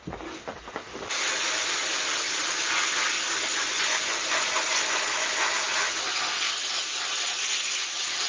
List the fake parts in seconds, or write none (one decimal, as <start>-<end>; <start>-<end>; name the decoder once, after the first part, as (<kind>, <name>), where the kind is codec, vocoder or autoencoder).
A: 3.5-5.5 (vocoder, Vocos)

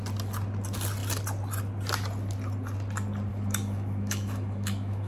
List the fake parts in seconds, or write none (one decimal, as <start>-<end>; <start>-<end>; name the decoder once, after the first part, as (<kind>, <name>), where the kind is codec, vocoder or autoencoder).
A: 3.3-5.1 (autoencoder, DAC-VAE)

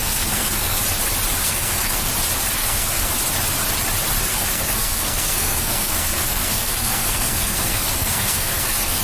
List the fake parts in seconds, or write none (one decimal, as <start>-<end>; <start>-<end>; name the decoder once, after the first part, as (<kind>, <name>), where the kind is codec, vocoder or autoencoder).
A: 0.0-0.8 (codec, SNAC); 1.4-2.1; 2.6-3.1; 4.3-9.0

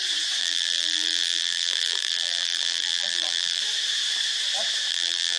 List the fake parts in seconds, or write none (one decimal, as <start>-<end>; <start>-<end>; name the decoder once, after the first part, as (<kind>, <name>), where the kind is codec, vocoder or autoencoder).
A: 0.4-3.6 (vocoder, BigVGAN v2); 4.9-5.4

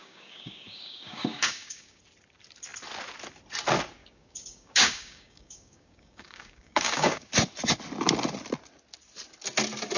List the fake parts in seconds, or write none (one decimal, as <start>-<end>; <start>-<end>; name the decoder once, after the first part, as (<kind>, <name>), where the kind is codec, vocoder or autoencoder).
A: 0.0-2.0 (codec, DAC); 4.0-7.3

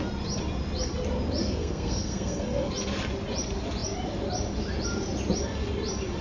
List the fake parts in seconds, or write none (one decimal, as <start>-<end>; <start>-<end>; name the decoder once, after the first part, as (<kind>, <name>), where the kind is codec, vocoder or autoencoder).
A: 1.4-2.7 (codec, SNAC)